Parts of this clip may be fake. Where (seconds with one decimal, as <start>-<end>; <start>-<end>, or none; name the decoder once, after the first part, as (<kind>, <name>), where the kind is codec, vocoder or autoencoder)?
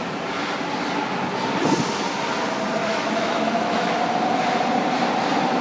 2.8-3.9 (autoencoder, DAC-VAE)